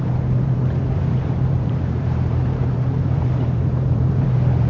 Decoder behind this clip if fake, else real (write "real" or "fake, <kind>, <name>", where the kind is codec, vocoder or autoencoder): fake, vocoder, BigVGAN v2